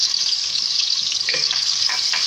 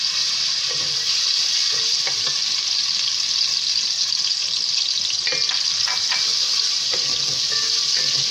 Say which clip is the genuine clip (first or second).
second